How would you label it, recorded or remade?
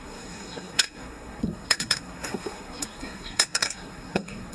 remade